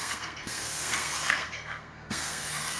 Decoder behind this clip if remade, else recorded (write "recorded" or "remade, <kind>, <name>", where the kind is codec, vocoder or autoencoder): remade, codec, SNAC